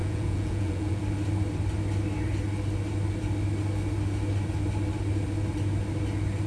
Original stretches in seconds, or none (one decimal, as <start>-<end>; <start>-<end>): 1.0-6.5